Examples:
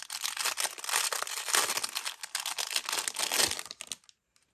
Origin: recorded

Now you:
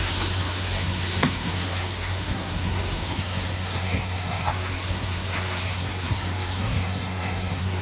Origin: remade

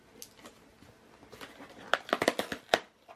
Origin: recorded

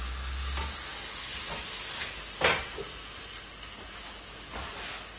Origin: recorded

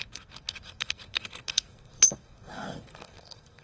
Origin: remade